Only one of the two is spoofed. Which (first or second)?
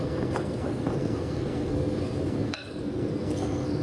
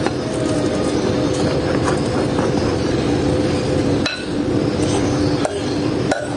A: first